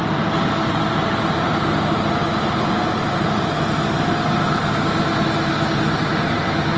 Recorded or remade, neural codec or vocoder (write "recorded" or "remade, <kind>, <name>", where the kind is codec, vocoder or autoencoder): recorded